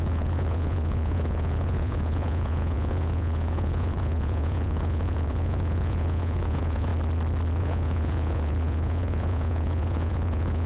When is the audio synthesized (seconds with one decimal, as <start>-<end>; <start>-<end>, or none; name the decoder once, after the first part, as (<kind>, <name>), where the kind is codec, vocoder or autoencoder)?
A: 0.0-6.9 (vocoder, Vocos); 7.6-10.7